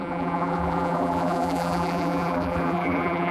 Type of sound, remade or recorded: remade